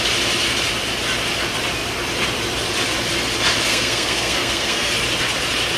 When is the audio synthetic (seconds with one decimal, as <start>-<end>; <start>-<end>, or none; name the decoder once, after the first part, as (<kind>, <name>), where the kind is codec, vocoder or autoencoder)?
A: 3.7-4.9 (codec, SNAC)